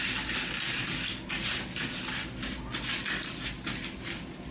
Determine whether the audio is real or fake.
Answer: real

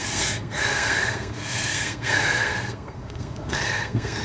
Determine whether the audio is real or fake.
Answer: fake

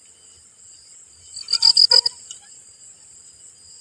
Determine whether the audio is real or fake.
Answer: real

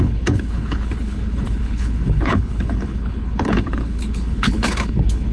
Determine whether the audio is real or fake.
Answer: fake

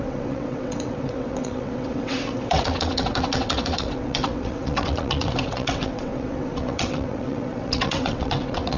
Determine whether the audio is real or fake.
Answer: fake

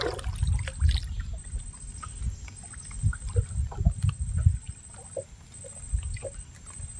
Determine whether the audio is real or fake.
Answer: real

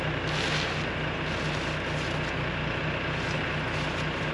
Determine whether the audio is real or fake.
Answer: real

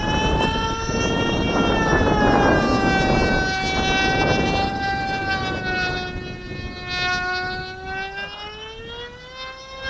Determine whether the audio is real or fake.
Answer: real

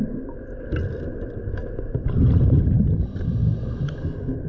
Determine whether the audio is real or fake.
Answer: real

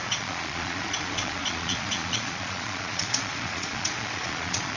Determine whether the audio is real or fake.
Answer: fake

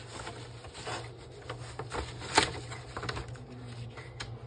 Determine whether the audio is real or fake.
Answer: real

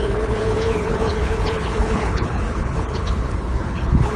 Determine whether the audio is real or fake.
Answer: fake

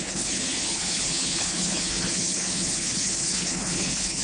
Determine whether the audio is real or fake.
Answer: fake